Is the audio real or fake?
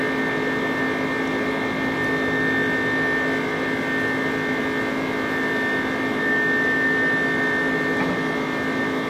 real